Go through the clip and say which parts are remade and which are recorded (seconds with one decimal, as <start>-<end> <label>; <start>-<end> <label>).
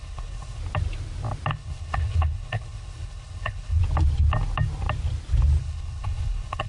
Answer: 0.0-0.6 remade; 0.6-1.5 recorded; 1.5-3.8 remade; 3.8-5.6 recorded; 5.6-6.7 remade